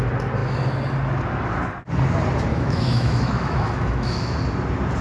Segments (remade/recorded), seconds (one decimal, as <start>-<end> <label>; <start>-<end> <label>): 0.0-2.5 recorded; 2.5-4.4 remade; 4.4-5.0 recorded